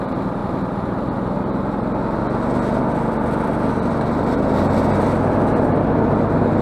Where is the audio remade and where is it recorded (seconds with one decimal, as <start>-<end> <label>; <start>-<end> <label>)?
0.0-6.6 recorded